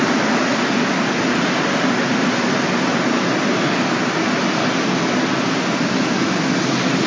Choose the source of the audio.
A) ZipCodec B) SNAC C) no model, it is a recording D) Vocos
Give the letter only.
C